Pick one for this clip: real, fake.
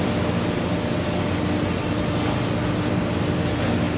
real